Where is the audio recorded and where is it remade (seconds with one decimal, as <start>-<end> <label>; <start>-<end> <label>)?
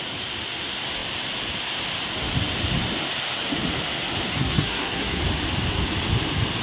0.0-4.3 recorded; 4.3-5.2 remade; 5.2-6.6 recorded